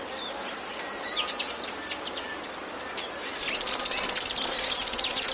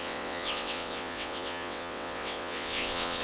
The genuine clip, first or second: first